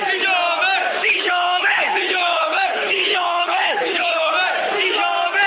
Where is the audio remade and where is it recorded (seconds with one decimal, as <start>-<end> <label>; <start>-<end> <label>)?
0.0-1.0 recorded; 1.0-4.3 remade; 4.3-5.5 recorded